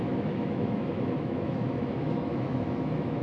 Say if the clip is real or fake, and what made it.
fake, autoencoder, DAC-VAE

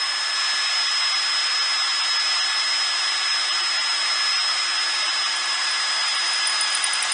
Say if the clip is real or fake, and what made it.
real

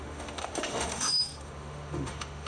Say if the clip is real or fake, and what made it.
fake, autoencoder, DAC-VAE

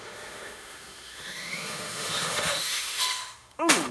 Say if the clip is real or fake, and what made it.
fake, autoencoder, DAC-VAE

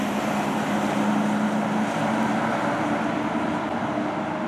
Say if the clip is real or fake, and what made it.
real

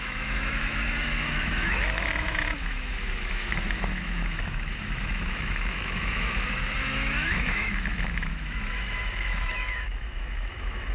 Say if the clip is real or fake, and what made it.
fake, autoencoder, DAC-VAE